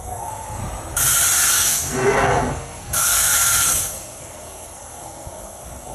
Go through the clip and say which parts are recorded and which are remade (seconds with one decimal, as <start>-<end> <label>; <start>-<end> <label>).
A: 0.0-0.6 remade; 0.6-1.5 recorded; 1.5-5.9 remade